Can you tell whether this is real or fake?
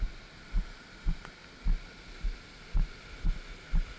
real